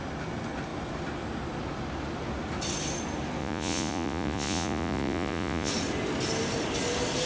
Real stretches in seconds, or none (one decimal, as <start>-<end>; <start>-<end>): 0.0-3.4; 5.7-7.3

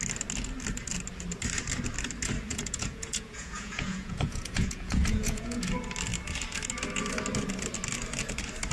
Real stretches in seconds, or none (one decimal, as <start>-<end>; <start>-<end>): 0.0-2.5; 5.6-8.7